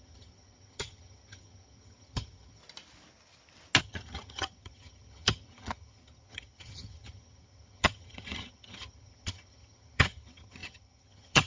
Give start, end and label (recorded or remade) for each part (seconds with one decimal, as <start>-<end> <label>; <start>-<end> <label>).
0.0-2.6 remade; 2.6-3.8 recorded; 3.8-11.5 remade

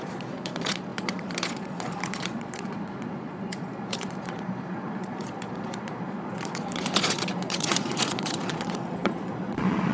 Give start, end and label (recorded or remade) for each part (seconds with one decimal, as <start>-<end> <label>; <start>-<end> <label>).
0.0-9.9 remade

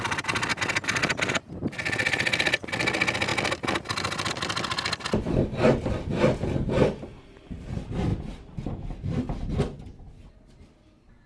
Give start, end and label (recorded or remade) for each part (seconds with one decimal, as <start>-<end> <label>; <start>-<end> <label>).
0.0-11.3 recorded

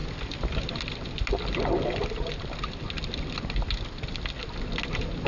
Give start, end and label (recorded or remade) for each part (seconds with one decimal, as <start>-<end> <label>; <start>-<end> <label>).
0.0-5.3 recorded

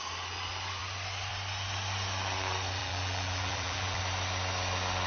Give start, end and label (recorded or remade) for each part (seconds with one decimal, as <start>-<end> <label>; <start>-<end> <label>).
0.0-2.8 recorded; 2.8-4.0 remade; 4.0-5.1 recorded

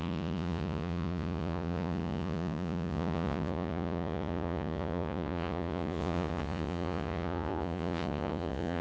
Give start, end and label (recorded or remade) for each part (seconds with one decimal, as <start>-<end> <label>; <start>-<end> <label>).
0.0-8.8 remade

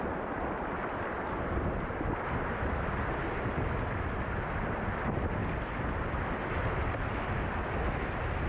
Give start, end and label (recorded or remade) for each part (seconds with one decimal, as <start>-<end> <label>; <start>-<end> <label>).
0.0-8.5 recorded

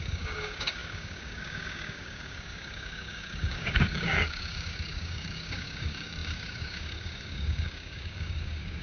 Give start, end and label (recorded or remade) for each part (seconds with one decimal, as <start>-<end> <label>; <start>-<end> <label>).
0.0-8.8 remade